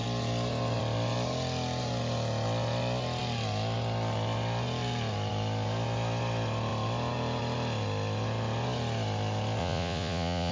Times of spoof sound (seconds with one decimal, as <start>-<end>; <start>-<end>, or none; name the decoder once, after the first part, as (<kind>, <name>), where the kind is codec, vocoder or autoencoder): 9.6-10.5 (vocoder, Vocos)